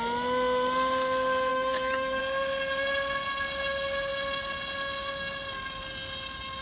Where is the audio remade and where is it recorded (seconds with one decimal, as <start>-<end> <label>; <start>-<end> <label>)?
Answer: 0.0-1.5 recorded; 1.5-2.2 remade; 2.2-6.6 recorded